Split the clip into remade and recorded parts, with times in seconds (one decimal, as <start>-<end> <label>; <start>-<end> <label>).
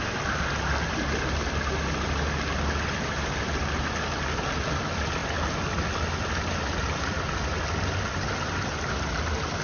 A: 0.0-9.6 recorded